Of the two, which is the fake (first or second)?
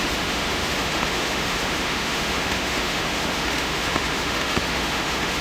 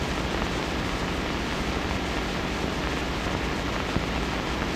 first